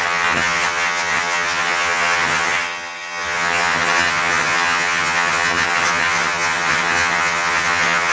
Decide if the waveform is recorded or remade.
remade